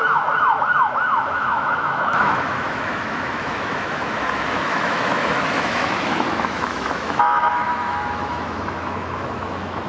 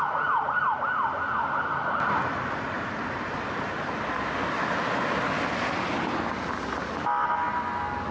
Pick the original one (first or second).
second